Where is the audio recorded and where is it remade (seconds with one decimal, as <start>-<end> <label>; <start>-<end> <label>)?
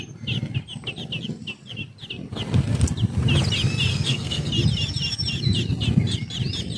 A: 0.0-3.9 recorded; 3.9-4.5 remade; 4.5-6.8 recorded